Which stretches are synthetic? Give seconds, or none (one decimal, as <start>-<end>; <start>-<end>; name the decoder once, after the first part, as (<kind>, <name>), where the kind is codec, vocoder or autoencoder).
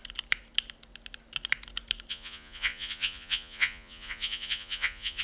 2.1-5.2 (vocoder, Vocos)